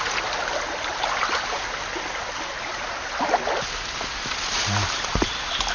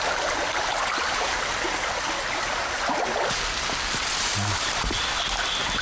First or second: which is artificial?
second